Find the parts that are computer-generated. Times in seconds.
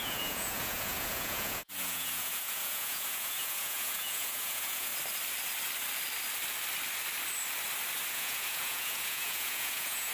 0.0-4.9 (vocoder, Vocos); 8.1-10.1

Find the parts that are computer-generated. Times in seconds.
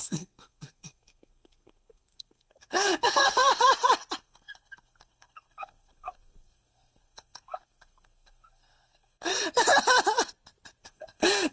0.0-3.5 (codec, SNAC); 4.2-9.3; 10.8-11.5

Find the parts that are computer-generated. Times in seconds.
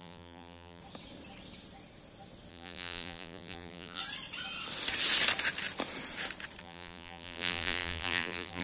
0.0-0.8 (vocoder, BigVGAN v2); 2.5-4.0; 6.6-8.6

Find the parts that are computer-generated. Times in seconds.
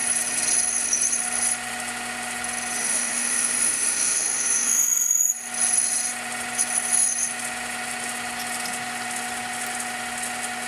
2.8-5.2 (autoencoder, DAC-VAE)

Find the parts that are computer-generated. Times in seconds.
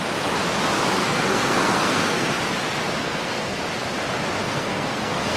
1.0-2.3 (codec, SNAC); 3.0-3.6; 4.4-5.4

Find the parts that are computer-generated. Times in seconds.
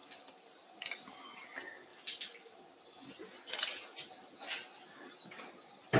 none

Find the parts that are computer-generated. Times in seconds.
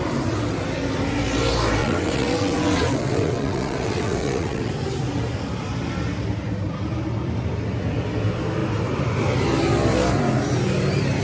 1.8-4.7 (vocoder, WaveNeXt)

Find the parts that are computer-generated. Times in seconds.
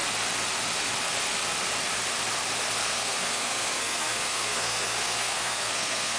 2.8-6.2 (codec, SNAC)